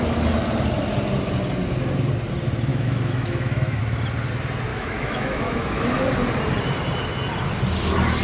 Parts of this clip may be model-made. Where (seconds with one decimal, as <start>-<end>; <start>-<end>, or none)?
2.7-3.8; 4.7-5.8